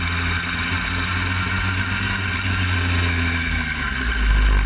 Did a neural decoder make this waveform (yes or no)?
no